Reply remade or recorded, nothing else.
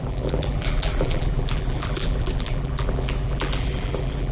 remade